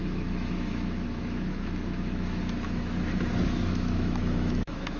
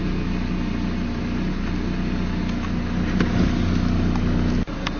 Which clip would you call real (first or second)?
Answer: second